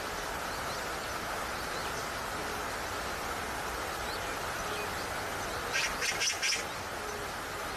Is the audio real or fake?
real